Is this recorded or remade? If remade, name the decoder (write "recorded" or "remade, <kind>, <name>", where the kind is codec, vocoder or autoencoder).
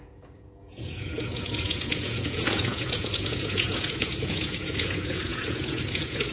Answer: remade, vocoder, Vocos